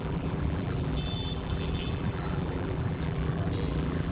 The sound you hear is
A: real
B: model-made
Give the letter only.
B